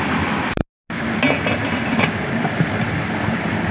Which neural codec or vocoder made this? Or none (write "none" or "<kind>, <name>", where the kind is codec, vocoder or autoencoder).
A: none